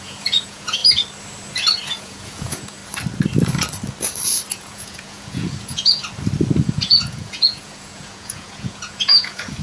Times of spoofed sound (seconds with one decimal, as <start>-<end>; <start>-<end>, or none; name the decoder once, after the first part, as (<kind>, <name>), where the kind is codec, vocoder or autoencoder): 0.0-0.8 (vocoder, Vocos); 1.9-2.8; 4.5-6.0; 6.6-9.6